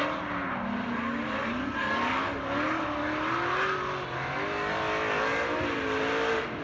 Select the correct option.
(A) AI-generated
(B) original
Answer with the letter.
B